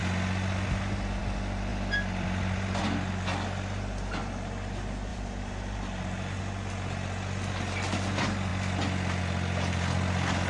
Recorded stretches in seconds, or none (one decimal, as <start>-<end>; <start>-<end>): 0.0-5.1; 6.4-10.5